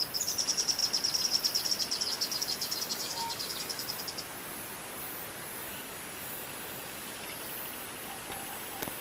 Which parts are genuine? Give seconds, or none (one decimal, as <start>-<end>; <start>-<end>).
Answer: 0.0-2.1; 4.0-5.6; 7.2-9.0

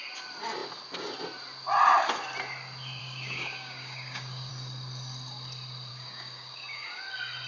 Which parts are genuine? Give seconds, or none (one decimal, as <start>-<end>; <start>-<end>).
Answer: 0.0-3.0; 4.5-5.9; 7.0-7.5

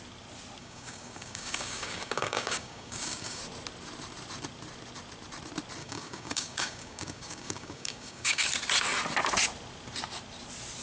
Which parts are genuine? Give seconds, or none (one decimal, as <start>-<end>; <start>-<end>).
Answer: 0.0-0.6; 3.4-5.8; 8.5-10.8

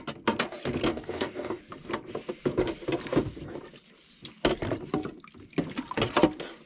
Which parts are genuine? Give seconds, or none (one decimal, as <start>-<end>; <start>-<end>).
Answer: 0.0-0.9; 1.6-6.7

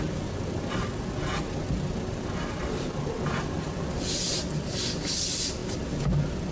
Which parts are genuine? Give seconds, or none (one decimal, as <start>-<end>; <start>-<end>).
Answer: 0.0-6.5

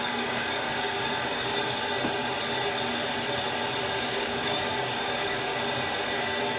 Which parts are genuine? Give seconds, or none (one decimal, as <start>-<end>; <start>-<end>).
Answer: 1.6-3.9; 5.5-6.0

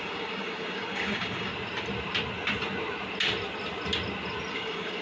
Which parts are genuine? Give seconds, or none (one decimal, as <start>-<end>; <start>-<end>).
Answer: 1.5-4.5

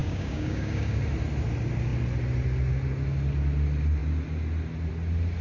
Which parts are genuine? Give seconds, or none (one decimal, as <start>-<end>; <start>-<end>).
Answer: 1.0-5.4